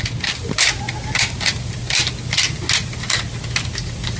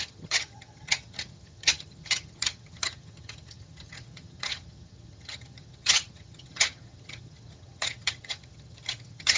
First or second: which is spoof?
second